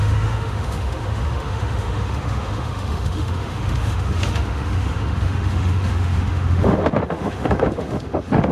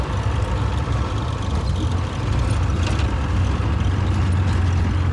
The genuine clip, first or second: second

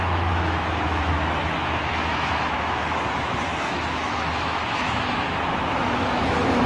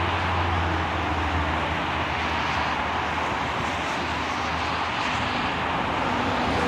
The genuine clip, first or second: second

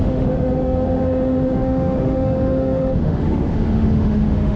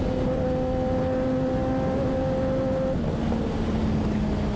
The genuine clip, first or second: second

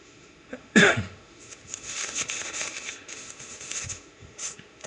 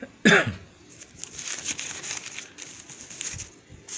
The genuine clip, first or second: second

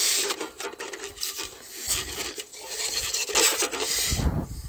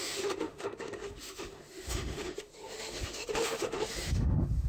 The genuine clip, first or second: first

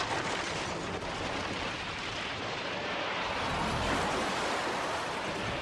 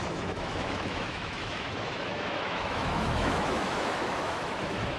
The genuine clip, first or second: first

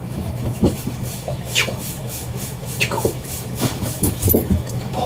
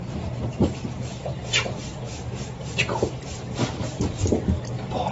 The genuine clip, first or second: second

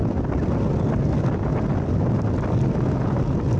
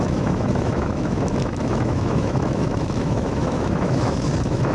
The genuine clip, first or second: first